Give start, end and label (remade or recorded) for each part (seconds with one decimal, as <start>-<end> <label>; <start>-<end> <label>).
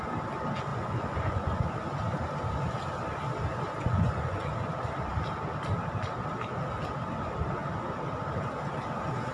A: 0.0-0.7 recorded; 0.7-1.7 remade; 1.7-3.8 recorded; 3.8-4.5 remade; 4.5-9.3 recorded